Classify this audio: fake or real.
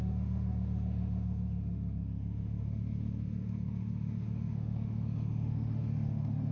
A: fake